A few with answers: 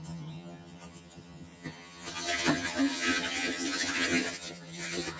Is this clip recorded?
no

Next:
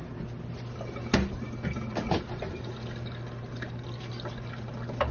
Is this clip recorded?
yes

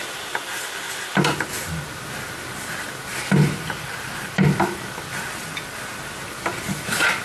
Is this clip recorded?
yes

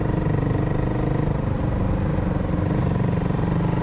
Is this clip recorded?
yes